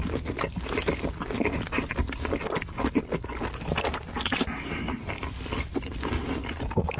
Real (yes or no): yes